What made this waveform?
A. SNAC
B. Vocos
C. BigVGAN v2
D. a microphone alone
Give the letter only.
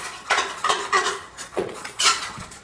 B